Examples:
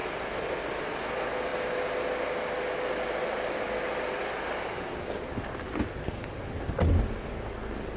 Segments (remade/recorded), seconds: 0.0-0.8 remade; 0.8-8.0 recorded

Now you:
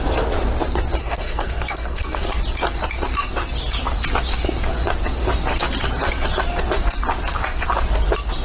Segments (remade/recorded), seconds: 0.0-1.0 recorded; 1.0-2.2 remade; 2.2-8.4 recorded

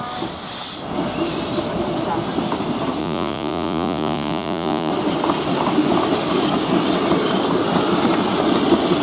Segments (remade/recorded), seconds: 0.0-3.0 recorded; 3.0-4.9 remade; 4.9-9.0 recorded